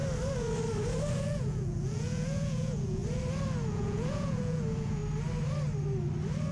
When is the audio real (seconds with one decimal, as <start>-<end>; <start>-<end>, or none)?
0.0-1.1; 3.0-3.7; 5.0-6.5